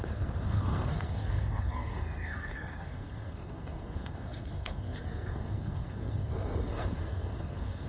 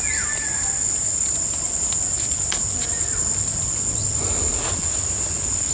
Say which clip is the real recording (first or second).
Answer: second